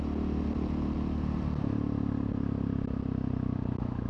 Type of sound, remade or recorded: recorded